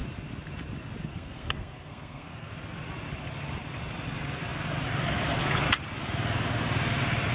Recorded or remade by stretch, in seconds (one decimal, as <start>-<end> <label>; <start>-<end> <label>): 0.0-1.1 recorded; 1.1-2.5 remade; 2.5-7.3 recorded